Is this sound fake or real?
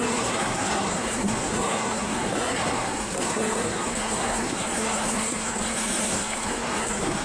fake